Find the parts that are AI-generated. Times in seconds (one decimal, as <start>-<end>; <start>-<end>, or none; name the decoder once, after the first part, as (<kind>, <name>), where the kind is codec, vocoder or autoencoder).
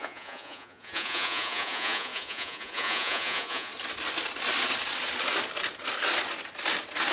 0.0-3.7 (vocoder, Vocos)